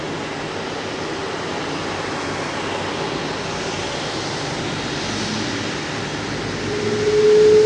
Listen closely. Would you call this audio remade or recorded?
recorded